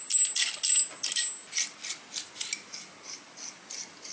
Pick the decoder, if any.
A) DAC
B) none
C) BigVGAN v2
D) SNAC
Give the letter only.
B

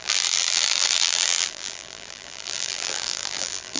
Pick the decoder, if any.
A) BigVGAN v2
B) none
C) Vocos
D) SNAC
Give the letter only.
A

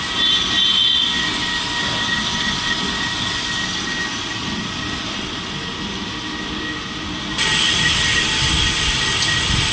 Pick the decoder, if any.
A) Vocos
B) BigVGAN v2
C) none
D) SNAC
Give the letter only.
C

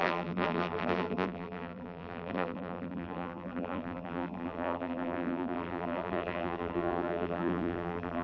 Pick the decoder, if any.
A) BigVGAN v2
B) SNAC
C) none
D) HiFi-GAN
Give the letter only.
A